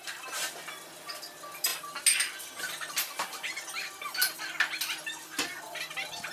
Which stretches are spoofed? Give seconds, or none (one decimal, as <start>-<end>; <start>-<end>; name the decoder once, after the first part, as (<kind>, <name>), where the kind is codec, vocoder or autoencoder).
none